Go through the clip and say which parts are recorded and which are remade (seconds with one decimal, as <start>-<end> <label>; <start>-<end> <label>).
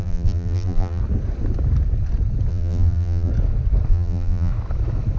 0.0-1.0 remade; 1.0-2.5 recorded; 2.5-3.3 remade; 3.3-3.9 recorded; 3.9-4.5 remade; 4.5-5.2 recorded